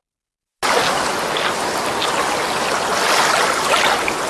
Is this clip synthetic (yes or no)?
no